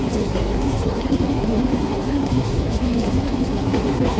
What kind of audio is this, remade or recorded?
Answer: remade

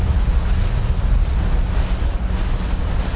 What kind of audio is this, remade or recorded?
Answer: recorded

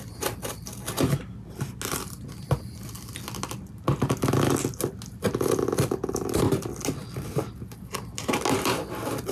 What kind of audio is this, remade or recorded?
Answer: recorded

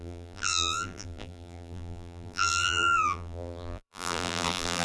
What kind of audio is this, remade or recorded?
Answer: remade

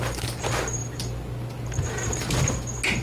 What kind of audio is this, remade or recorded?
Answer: recorded